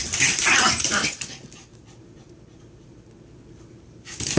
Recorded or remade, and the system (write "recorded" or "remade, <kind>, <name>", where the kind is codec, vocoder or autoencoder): remade, vocoder, BigVGAN v2